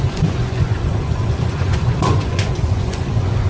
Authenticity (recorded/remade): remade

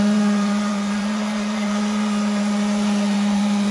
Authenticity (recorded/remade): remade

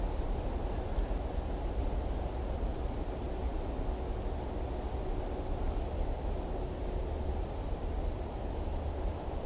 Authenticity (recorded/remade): recorded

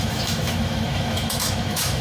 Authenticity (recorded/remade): remade